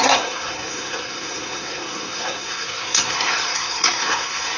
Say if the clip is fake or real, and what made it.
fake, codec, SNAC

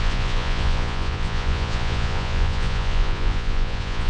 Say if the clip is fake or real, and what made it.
fake, vocoder, Vocos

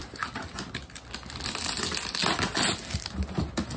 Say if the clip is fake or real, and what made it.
real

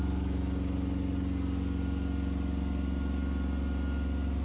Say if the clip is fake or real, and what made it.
real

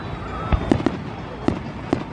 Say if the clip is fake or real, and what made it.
real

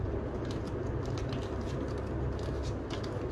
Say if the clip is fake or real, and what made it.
real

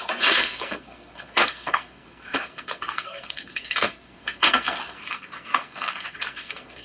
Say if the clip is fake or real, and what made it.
fake, codec, SNAC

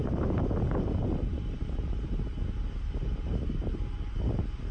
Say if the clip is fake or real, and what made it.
real